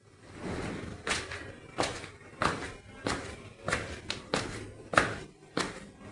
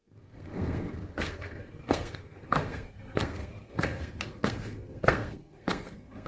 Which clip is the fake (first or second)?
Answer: second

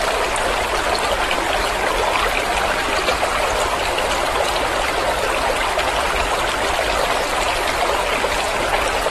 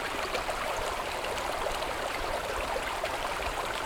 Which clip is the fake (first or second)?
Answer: second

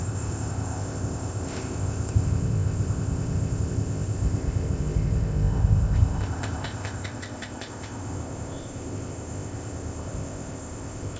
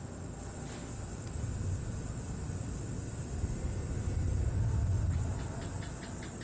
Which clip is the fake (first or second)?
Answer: first